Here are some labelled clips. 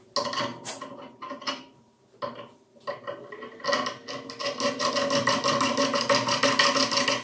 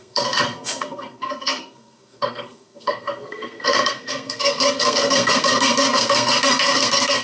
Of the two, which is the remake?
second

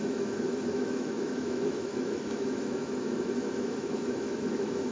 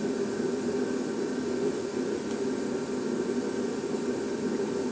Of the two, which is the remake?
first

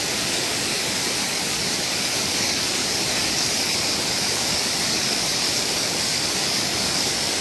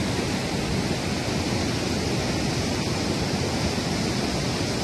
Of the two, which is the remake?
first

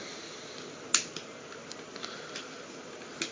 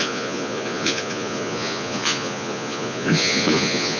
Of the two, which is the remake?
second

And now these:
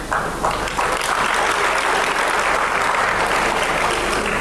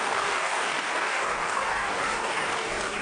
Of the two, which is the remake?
second